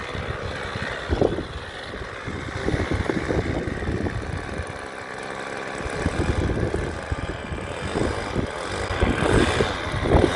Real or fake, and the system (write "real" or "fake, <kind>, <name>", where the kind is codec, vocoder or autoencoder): real